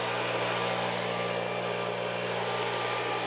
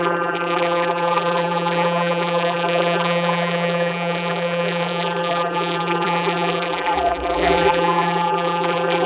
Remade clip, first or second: second